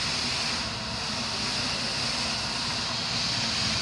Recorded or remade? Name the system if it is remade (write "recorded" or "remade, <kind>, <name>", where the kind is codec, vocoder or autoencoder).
recorded